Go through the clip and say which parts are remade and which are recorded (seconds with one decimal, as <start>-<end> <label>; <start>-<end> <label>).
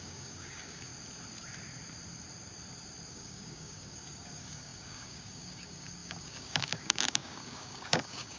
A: 0.0-0.9 remade; 0.9-3.1 recorded; 3.1-8.4 remade